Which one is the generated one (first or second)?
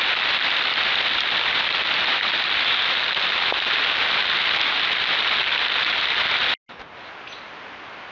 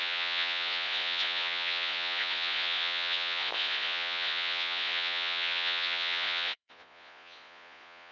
second